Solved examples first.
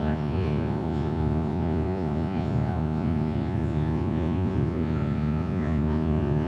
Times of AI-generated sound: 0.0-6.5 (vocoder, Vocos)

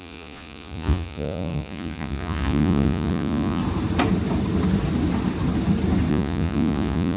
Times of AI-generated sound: 0.0-3.6 (vocoder, Vocos); 6.1-7.2

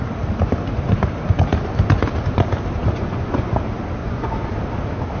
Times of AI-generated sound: 2.8-3.5 (vocoder, Vocos); 4.0-4.5

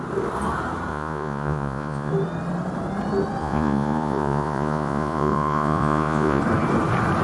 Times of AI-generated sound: 0.9-2.1 (vocoder, Vocos); 3.4-6.4

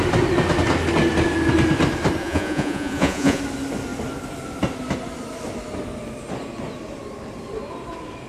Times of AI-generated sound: 2.2-3.4 (vocoder, Vocos)

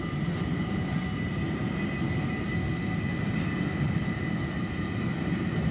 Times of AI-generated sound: none

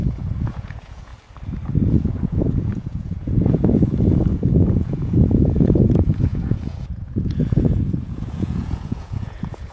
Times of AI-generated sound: 0.0-1.1 (vocoder, Vocos); 1.9-9.7